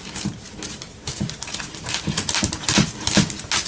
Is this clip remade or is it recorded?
recorded